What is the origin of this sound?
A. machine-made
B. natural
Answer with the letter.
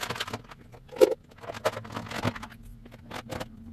B